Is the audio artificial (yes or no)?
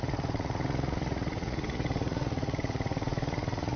yes